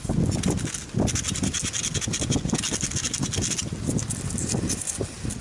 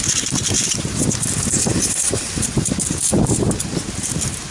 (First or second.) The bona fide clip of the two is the first